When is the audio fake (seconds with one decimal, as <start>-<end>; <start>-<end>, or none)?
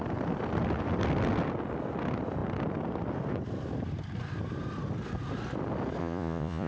6.0-6.7